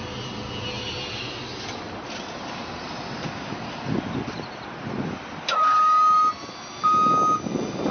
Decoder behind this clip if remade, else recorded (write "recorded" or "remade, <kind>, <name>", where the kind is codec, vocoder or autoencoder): recorded